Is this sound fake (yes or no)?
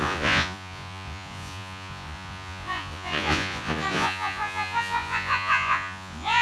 yes